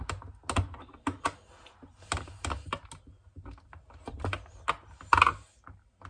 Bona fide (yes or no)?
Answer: yes